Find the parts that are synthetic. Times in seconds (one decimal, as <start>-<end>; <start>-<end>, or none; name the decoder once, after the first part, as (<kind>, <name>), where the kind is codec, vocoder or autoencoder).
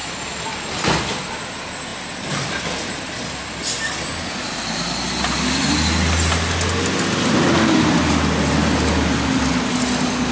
none